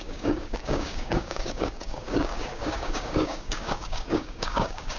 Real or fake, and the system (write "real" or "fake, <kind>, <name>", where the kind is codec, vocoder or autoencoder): fake, codec, DAC